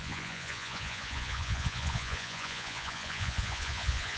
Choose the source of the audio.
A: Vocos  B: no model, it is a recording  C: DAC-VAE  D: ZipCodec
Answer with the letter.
A